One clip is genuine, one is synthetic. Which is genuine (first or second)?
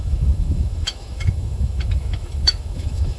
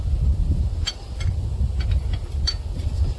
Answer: second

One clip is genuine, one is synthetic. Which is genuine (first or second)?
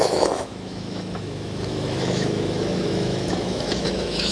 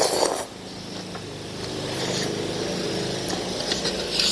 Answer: second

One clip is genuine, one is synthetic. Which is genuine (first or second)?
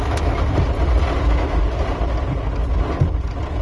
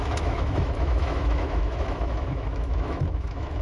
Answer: first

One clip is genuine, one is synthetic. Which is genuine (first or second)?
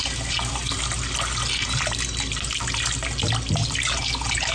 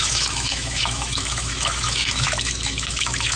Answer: first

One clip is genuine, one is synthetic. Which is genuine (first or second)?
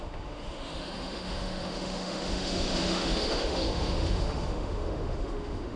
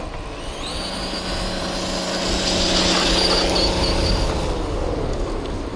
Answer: second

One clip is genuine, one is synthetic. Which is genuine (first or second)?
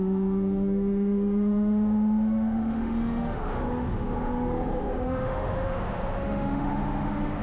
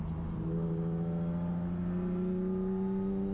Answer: second